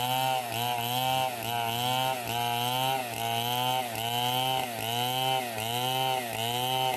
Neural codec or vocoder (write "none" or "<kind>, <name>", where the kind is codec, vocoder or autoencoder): none